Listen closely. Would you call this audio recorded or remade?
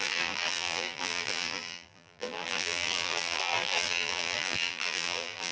remade